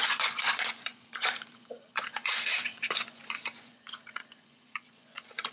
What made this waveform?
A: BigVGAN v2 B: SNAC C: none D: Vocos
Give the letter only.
D